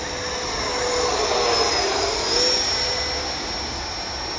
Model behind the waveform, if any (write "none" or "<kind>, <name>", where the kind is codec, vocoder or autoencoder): none